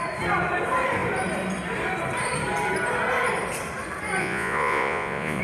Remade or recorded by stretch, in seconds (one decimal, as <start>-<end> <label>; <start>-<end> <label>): 0.0-4.2 recorded; 4.2-5.4 remade